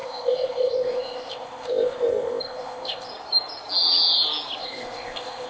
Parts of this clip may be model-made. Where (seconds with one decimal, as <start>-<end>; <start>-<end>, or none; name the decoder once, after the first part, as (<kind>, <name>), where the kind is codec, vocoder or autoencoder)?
0.0-3.1 (codec, ZipCodec); 4.6-5.5